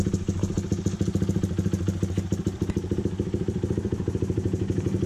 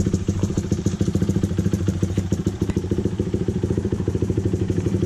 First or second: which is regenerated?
second